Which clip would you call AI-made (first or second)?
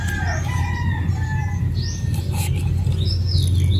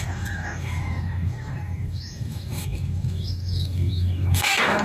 second